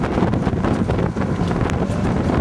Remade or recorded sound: recorded